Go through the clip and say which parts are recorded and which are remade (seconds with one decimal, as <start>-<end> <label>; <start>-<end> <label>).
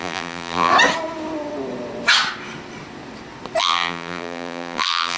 0.0-0.7 remade; 0.7-3.6 recorded; 3.6-5.2 remade